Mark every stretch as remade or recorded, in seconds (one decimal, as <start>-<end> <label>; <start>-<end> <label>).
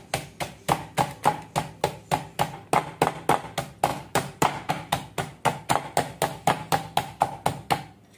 0.0-3.9 recorded; 3.9-4.7 remade; 4.7-8.2 recorded